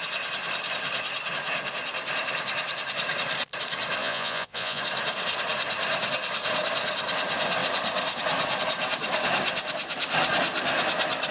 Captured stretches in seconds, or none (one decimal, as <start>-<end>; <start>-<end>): 0.0-4.0; 4.8-11.3